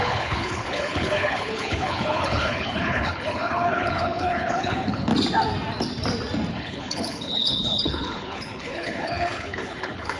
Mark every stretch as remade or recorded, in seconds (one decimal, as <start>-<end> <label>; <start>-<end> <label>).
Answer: 0.0-5.1 remade; 5.1-6.5 recorded; 6.5-10.2 remade